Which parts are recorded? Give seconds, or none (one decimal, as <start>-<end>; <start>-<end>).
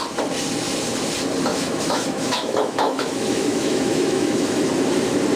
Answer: 0.0-1.5; 4.7-5.4